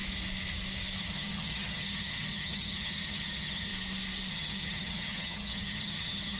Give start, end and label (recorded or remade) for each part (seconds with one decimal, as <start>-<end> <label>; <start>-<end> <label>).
0.0-1.0 recorded; 1.0-3.7 remade; 3.7-4.3 recorded; 4.3-6.4 remade